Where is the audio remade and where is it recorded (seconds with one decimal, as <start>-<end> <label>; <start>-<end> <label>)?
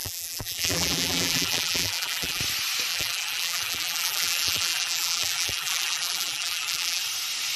0.0-2.4 remade; 2.4-2.9 recorded; 2.9-7.0 remade; 7.0-7.6 recorded